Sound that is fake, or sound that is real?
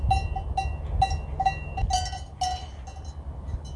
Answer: real